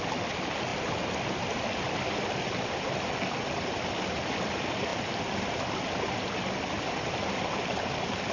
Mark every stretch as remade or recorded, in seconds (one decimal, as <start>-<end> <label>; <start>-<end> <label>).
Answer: 0.0-8.3 recorded